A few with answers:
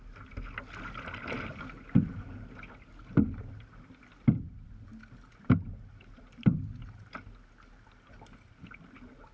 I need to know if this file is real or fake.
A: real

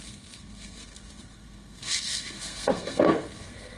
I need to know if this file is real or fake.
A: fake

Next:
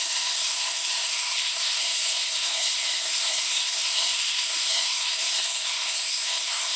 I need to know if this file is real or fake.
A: fake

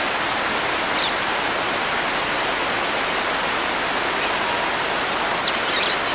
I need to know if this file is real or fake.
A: real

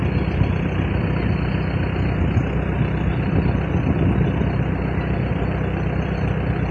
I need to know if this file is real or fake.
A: real